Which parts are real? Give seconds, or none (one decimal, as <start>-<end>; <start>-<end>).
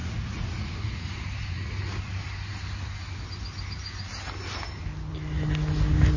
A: 1.7-6.2